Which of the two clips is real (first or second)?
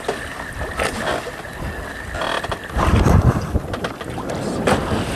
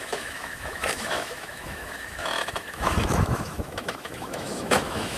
first